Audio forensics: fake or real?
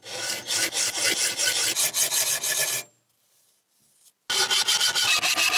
real